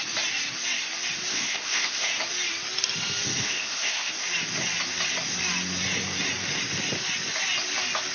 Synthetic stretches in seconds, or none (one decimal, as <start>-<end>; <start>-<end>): 1.3-2.1; 3.4-4.1